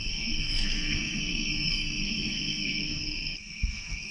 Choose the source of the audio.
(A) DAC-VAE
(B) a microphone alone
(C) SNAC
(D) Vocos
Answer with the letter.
C